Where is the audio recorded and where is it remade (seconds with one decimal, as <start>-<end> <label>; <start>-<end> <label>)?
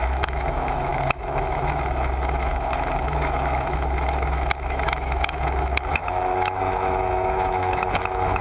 0.0-8.4 remade